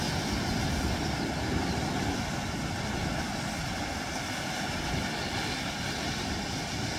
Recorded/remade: recorded